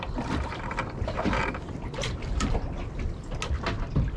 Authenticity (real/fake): real